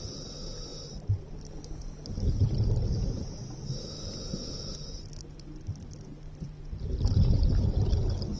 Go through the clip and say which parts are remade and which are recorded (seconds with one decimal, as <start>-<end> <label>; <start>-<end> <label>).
0.0-8.4 recorded